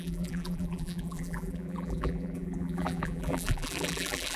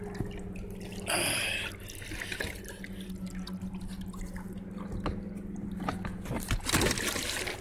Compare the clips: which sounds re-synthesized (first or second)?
first